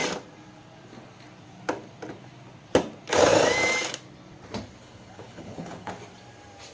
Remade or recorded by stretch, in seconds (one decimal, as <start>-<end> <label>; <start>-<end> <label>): 0.0-4.8 recorded; 4.8-5.9 remade; 5.9-6.7 recorded